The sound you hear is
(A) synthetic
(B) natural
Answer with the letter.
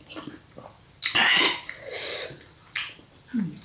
B